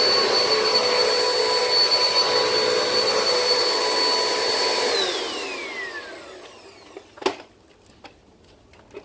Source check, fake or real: real